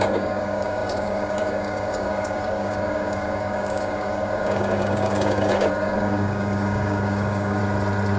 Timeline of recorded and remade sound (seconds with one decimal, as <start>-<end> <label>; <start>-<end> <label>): 0.0-7.6 remade; 7.6-8.2 recorded